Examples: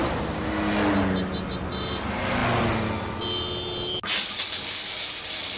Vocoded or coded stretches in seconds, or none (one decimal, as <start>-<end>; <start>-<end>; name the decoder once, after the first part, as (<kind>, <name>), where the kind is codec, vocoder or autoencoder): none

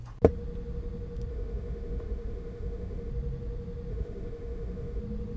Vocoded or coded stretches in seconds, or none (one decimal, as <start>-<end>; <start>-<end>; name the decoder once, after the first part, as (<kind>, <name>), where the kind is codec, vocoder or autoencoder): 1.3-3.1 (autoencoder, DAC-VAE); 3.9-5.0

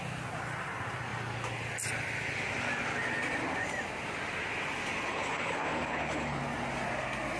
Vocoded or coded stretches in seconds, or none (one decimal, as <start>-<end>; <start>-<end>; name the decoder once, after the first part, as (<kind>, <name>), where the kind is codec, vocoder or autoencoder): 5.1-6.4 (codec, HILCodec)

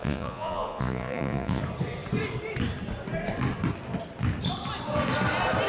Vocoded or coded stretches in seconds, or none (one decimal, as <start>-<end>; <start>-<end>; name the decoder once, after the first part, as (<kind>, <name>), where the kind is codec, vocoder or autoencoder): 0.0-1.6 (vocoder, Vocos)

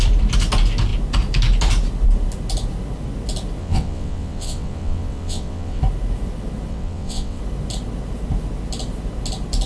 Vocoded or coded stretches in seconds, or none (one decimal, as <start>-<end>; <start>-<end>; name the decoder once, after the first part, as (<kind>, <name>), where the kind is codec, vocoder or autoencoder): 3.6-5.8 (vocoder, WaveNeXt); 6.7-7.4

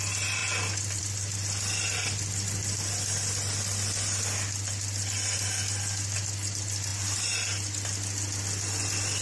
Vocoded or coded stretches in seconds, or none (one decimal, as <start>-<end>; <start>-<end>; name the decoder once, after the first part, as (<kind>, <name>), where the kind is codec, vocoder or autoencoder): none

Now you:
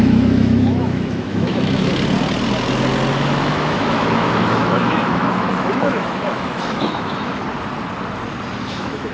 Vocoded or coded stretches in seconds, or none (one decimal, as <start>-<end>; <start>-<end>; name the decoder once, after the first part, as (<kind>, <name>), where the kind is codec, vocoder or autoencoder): 0.0-1.9 (autoencoder, DAC-VAE); 3.1-7.4; 8.7-9.1

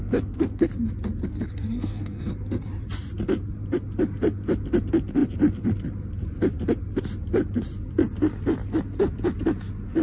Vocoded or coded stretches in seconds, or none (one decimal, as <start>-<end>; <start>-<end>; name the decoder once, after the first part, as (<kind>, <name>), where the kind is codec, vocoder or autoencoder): 0.0-0.7 (codec, SNAC); 1.3-2.3